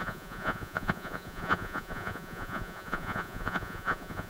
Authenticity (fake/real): fake